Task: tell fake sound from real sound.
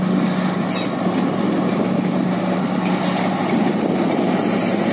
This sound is real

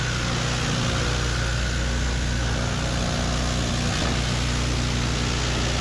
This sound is real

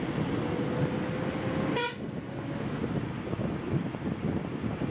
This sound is real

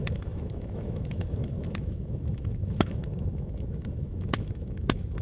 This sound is fake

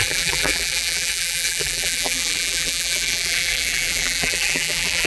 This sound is fake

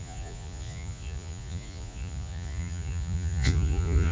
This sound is fake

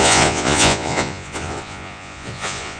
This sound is fake